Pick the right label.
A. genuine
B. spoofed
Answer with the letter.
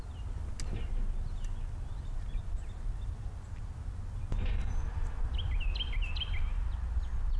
A